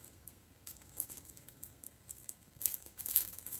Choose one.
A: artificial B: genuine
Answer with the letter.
A